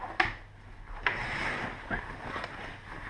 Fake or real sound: real